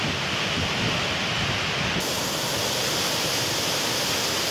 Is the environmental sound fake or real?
real